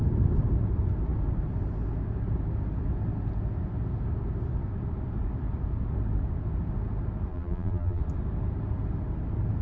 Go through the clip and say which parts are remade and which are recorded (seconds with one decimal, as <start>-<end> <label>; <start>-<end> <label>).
0.0-7.3 recorded; 7.3-8.0 remade; 8.0-9.6 recorded